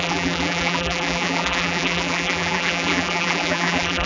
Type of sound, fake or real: fake